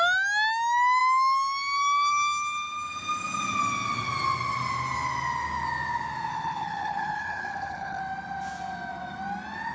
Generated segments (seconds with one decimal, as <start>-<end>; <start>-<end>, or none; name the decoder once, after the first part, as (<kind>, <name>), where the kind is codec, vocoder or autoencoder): 6.3-8.0 (codec, HILCodec)